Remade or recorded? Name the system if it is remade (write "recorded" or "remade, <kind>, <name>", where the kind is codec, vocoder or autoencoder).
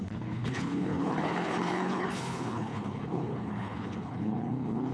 remade, codec, HILCodec